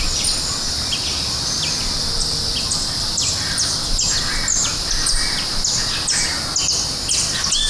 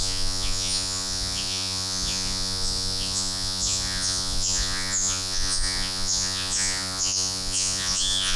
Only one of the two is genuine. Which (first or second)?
first